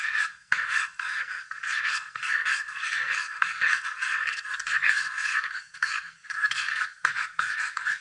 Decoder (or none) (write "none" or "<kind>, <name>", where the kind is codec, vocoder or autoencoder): codec, SNAC